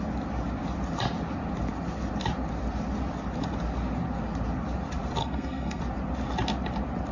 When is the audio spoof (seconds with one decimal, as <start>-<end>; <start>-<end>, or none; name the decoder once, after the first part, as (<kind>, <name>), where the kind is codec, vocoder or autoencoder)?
5.2-5.8 (codec, SNAC)